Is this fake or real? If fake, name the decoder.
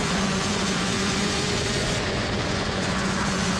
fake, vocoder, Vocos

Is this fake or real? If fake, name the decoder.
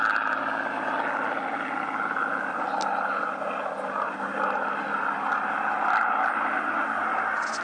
real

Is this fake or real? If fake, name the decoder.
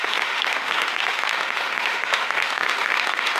fake, autoencoder, DAC-VAE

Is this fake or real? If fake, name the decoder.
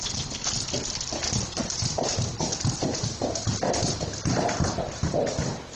real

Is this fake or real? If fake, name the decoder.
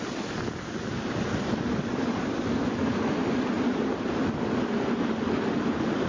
real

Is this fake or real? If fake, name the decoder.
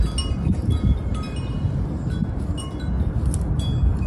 real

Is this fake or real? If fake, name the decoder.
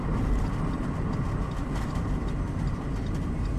real